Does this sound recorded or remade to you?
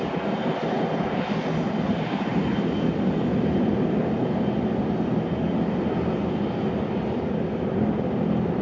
recorded